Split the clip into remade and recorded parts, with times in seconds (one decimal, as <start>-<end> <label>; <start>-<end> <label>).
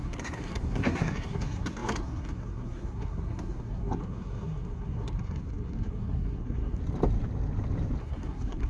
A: 0.0-6.8 remade; 6.8-8.0 recorded; 8.0-8.7 remade